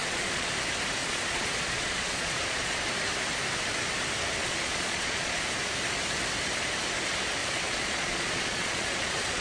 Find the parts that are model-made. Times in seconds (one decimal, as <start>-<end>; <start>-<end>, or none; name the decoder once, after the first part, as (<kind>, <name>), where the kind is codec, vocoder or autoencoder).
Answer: 0.0-0.5 (vocoder, Vocos); 1.0-2.9; 4.4-5.4; 7.4-9.4